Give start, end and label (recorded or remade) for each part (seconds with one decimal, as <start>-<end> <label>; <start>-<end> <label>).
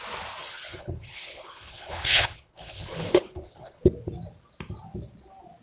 0.0-0.4 recorded; 0.4-3.8 remade; 3.8-5.6 recorded